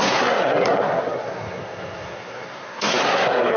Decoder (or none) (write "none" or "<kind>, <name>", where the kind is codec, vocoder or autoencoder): codec, SNAC